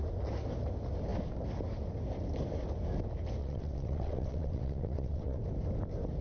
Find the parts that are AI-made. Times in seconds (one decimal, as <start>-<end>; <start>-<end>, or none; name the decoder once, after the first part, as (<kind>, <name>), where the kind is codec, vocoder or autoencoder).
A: 3.4-5.4 (vocoder, WaveNeXt)